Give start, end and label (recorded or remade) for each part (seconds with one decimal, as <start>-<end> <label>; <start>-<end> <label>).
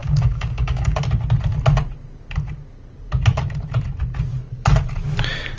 0.0-1.0 remade; 1.0-5.6 recorded